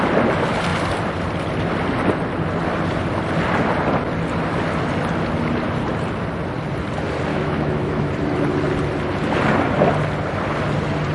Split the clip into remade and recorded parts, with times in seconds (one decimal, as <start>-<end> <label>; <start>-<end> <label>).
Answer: 0.0-7.3 recorded; 7.3-8.1 remade; 8.1-11.1 recorded